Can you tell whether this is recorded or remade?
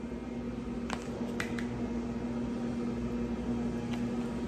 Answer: recorded